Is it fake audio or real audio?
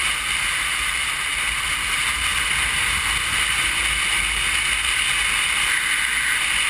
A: real